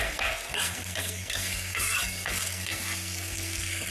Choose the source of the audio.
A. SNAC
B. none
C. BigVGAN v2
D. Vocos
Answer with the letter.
A